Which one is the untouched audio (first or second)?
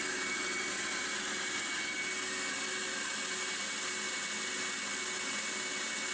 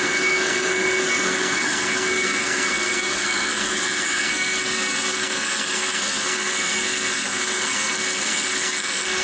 first